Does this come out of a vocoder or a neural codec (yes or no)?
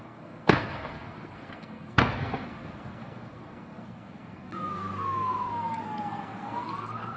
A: yes